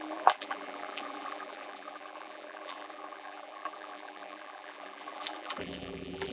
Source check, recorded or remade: remade